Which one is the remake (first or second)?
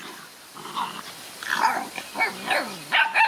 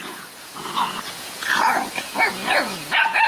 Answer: second